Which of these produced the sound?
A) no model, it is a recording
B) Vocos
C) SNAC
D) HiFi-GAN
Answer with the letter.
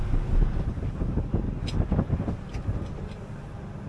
A